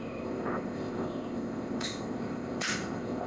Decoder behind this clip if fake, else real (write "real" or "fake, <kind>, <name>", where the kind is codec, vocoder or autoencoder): fake, codec, ZipCodec